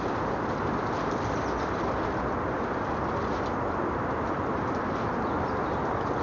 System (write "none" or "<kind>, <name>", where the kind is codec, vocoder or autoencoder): none